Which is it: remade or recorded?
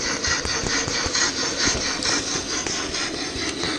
recorded